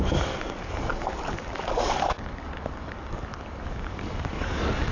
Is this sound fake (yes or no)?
yes